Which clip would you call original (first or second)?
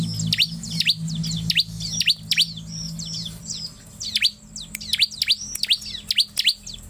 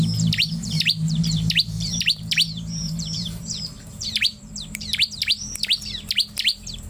first